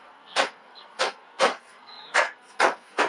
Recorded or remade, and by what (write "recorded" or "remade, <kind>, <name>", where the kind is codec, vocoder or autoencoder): remade, codec, SNAC